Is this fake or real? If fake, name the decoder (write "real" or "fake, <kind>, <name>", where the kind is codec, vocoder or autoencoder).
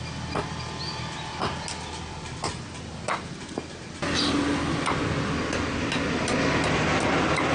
real